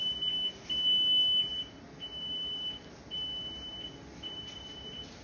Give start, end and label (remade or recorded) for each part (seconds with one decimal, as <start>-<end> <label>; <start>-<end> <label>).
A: 0.0-1.5 recorded; 1.5-3.1 remade; 3.1-5.2 recorded

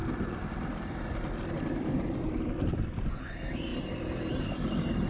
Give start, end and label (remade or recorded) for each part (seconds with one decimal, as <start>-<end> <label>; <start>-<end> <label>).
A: 0.0-3.1 remade; 3.1-3.7 recorded; 3.7-5.1 remade

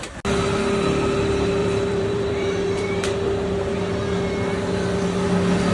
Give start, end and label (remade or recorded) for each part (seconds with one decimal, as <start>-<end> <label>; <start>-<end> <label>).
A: 0.0-1.6 recorded; 1.6-3.0 remade; 3.0-5.7 recorded

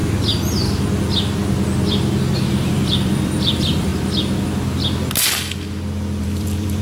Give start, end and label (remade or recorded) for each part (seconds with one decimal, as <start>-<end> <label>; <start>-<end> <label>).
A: 0.0-2.5 recorded; 2.5-3.9 remade; 3.9-6.2 recorded; 6.2-6.8 remade

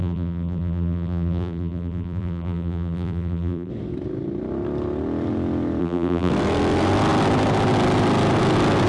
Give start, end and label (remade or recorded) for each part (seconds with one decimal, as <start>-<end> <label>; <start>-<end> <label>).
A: 0.0-3.7 remade; 3.7-5.8 recorded; 5.8-6.3 remade; 6.3-8.9 recorded

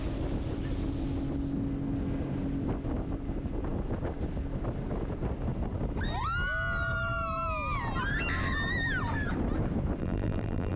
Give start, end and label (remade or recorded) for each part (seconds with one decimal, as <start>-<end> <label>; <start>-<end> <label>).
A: 0.0-10.0 recorded; 10.0-10.8 remade

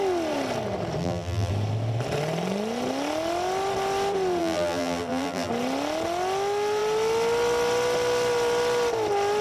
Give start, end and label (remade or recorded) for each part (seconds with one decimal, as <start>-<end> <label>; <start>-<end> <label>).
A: 0.0-1.0 recorded; 1.0-1.5 remade; 1.5-4.4 recorded; 4.4-5.5 remade; 5.5-9.4 recorded